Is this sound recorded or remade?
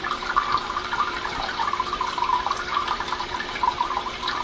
remade